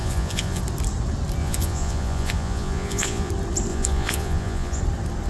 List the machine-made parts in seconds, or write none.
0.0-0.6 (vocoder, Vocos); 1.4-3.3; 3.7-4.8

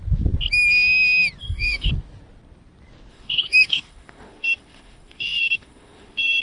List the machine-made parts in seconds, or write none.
1.4-1.9 (autoencoder, DAC-VAE); 3.1-6.4